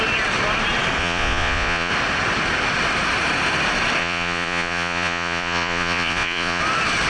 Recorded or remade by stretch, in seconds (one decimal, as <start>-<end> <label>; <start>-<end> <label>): 0.0-1.0 recorded; 1.0-1.9 remade; 1.9-4.0 recorded; 4.0-6.6 remade; 6.6-7.1 recorded